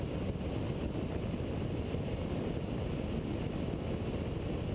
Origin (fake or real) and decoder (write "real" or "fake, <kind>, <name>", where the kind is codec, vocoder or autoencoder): real